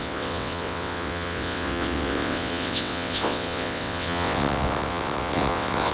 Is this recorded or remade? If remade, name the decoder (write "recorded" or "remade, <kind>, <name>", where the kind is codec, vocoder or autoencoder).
remade, vocoder, WaveNeXt